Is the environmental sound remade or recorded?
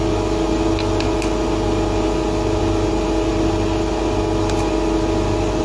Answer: recorded